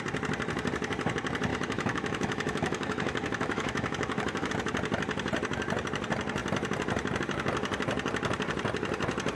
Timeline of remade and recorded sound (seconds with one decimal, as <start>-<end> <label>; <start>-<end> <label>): 0.0-1.5 recorded; 1.5-4.5 remade; 4.5-9.4 recorded